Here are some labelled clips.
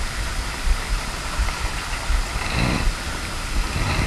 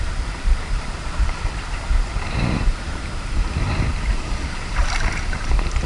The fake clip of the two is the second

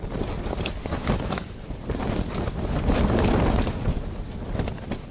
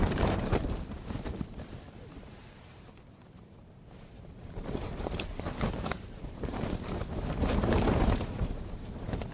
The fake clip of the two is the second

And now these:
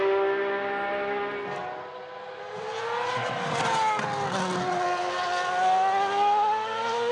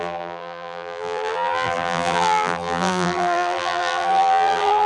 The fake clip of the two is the second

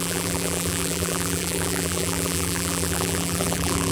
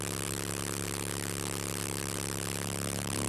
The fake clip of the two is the first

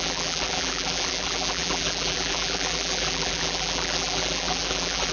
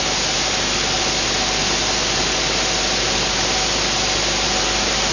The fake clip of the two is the first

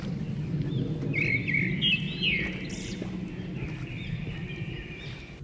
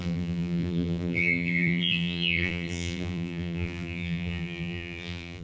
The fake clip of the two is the second